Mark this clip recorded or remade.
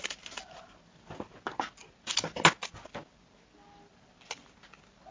recorded